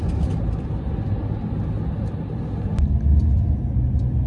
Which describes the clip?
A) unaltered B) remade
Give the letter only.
A